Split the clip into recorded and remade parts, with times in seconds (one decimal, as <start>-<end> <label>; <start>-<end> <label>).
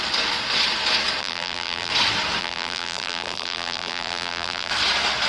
0.0-1.2 recorded; 1.2-1.9 remade; 1.9-2.4 recorded; 2.4-4.7 remade; 4.7-5.3 recorded